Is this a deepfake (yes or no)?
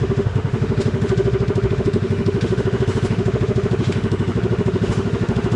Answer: yes